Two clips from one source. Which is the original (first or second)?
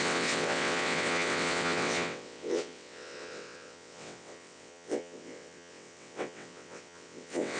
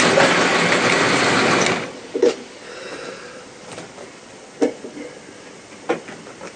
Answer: second